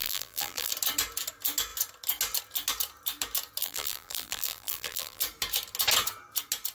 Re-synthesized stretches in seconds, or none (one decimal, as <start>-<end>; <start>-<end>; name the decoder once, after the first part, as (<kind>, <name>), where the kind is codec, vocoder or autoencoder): 0.0-0.7 (vocoder, BigVGAN v2); 3.6-5.2